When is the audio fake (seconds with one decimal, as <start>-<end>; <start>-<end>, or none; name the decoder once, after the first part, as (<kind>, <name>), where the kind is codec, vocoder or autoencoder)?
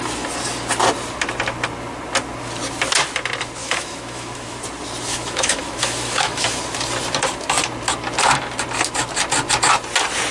3.6-4.6 (autoencoder, DAC-VAE); 5.1-6.6